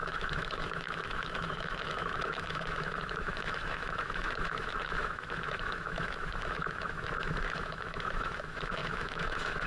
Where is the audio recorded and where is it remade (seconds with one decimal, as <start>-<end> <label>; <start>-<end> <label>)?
0.0-9.7 remade

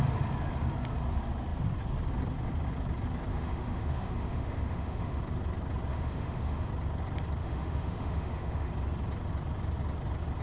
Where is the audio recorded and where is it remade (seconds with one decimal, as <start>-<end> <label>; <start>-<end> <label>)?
0.0-3.3 recorded; 3.3-5.2 remade; 5.2-5.9 recorded; 5.9-6.7 remade; 6.7-7.4 recorded; 7.4-8.7 remade; 8.7-10.4 recorded

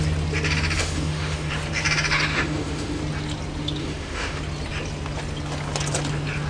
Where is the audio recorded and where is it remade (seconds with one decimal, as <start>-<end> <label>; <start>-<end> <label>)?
0.0-0.8 recorded; 0.8-1.5 remade; 1.5-2.3 recorded; 2.3-3.0 remade; 3.0-3.8 recorded; 3.8-4.4 remade; 4.4-6.5 recorded